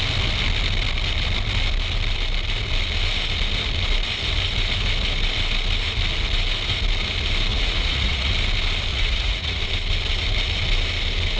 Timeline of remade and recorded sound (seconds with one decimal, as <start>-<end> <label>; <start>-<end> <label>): 0.0-7.5 recorded; 7.5-8.3 remade; 8.3-8.9 recorded; 8.9-9.6 remade; 9.6-11.4 recorded